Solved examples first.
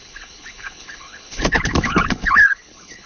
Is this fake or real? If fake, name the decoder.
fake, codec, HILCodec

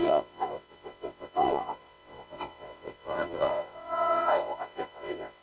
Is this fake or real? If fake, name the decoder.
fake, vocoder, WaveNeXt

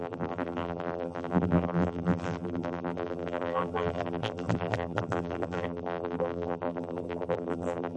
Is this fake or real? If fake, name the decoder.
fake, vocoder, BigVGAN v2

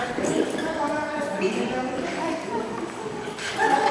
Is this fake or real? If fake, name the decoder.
fake, codec, DAC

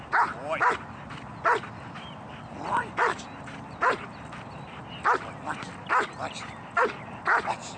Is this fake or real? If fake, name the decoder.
real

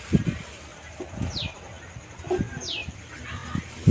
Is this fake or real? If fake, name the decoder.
real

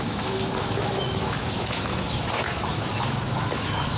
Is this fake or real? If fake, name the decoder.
fake, autoencoder, DAC-VAE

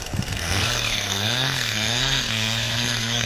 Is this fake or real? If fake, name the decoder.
fake, codec, SNAC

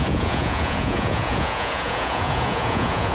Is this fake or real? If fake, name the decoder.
fake, vocoder, Vocos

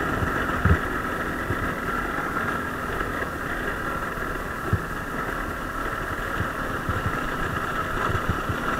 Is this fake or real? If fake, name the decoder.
real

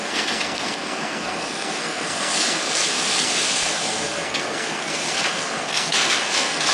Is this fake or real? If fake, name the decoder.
fake, codec, SNAC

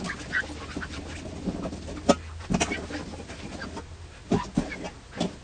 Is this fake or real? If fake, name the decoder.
real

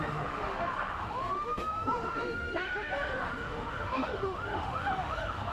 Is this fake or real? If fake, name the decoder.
fake, autoencoder, DAC-VAE